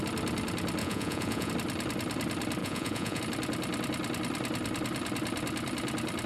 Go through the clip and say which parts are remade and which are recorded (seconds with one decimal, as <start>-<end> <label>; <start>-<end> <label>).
0.0-0.8 recorded; 0.8-1.5 remade; 1.5-2.6 recorded; 2.6-3.2 remade; 3.2-6.3 recorded